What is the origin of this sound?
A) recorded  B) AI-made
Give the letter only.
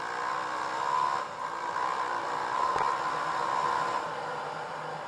A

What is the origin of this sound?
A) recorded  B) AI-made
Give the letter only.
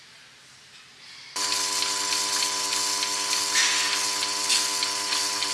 A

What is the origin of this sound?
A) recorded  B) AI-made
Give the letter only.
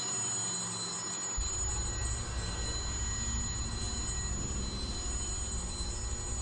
A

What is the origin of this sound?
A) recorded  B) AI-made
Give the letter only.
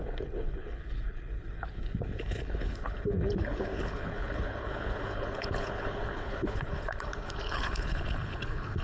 B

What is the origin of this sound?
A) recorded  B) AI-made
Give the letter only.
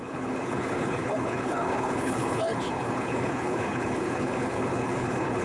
B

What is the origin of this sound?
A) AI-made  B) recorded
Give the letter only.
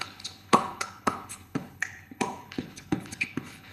A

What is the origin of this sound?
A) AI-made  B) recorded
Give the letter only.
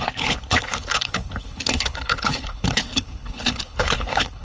A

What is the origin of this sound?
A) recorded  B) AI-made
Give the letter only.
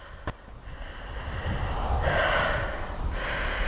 A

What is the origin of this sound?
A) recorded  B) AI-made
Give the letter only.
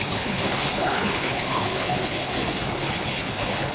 B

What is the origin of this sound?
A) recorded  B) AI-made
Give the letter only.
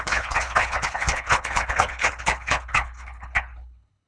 B